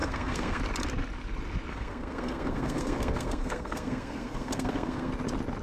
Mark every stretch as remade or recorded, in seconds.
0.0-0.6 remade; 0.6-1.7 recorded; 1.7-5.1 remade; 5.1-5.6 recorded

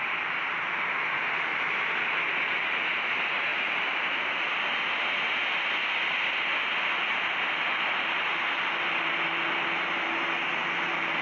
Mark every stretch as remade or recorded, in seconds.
0.0-1.5 remade; 1.5-2.5 recorded; 2.5-3.5 remade; 3.5-7.8 recorded; 7.8-11.2 remade

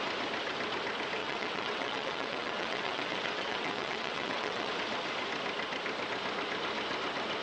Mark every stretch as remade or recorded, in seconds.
0.0-1.2 recorded; 1.2-4.7 remade; 4.7-7.4 recorded

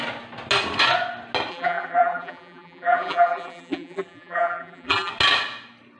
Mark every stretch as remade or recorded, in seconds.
0.0-1.5 recorded; 1.5-5.1 remade; 5.1-6.0 recorded

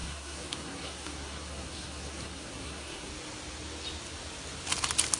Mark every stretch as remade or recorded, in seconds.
0.0-3.1 remade; 3.1-5.2 recorded

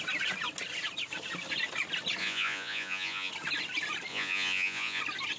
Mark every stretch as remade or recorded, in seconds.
0.0-2.2 recorded; 2.2-3.3 remade; 3.3-4.1 recorded; 4.1-5.0 remade; 5.0-5.4 recorded